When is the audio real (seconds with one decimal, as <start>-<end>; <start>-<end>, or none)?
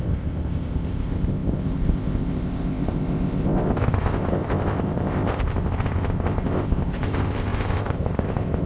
none